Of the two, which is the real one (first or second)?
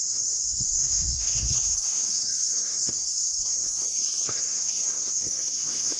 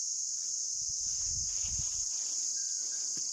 second